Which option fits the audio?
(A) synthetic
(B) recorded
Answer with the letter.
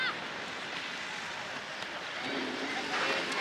B